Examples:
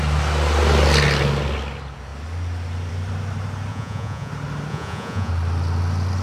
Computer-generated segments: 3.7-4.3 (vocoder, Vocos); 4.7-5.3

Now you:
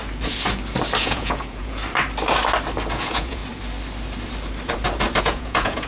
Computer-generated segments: 1.0-1.8 (vocoder, Vocos); 2.9-3.4; 5.2-5.9

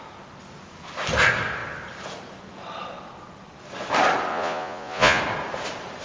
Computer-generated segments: 4.3-5.2 (vocoder, Vocos)

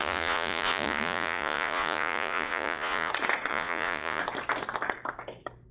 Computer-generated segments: 0.0-3.1 (vocoder, Vocos); 3.5-4.2

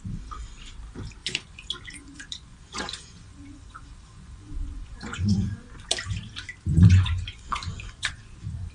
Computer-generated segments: 1.2-5.6 (vocoder, Vocos); 6.7-8.7

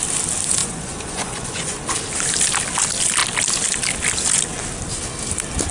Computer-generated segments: 0.6-1.8 (vocoder, Vocos)

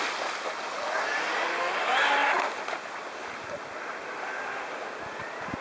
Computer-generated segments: none

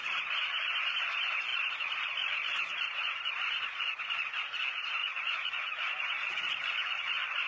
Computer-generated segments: 5.0-7.1 (vocoder, Vocos)